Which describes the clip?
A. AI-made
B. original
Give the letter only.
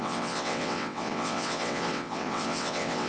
A